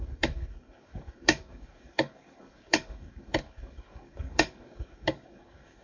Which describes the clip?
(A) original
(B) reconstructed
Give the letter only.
B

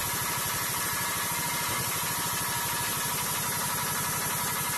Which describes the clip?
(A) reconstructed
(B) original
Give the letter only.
B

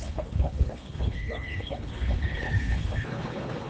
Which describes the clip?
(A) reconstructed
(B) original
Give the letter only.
A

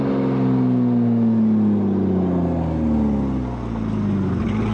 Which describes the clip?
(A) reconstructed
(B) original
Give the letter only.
B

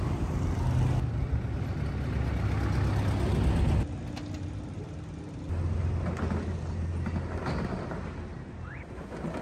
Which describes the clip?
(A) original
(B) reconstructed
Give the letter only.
A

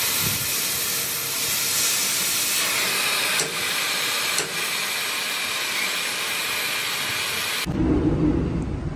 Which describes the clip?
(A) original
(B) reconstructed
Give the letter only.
A